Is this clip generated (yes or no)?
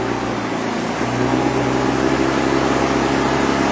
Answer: no